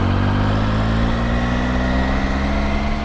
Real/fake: real